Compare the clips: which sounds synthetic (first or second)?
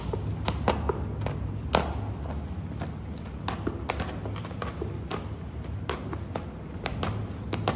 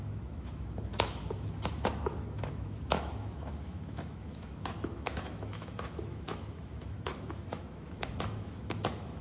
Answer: second